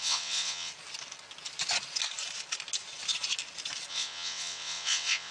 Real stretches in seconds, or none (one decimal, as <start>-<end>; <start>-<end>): 0.7-3.9